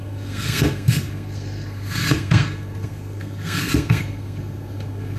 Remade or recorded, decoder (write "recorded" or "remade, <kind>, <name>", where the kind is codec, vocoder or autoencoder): remade, codec, SNAC